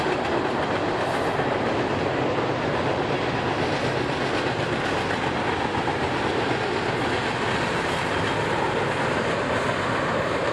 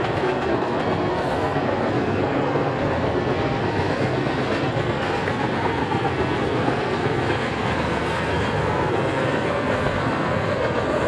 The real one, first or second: first